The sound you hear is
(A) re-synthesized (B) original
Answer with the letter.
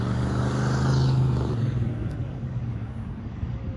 A